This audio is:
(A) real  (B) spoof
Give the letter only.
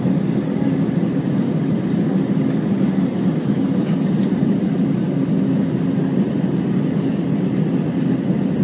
A